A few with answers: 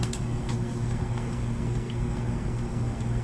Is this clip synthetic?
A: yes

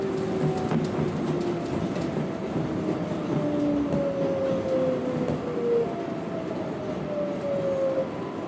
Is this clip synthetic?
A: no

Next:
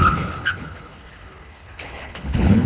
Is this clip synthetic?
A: yes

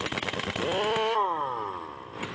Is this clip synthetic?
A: no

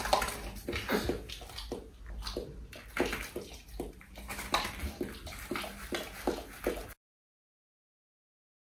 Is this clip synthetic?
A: no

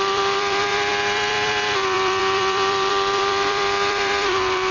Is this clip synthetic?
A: yes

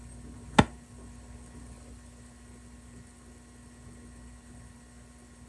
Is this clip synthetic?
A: no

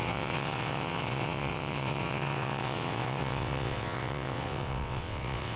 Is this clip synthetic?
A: yes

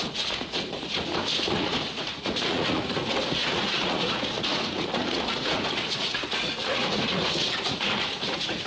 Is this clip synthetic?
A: yes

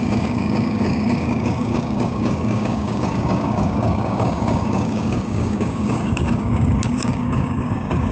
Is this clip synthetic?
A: yes